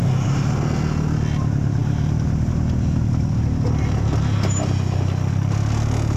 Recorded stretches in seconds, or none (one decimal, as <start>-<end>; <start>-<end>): 0.0-6.2